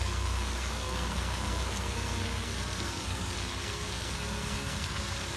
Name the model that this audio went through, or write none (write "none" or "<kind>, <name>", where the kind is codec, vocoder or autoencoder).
codec, SNAC